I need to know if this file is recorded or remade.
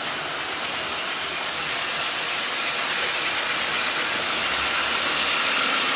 recorded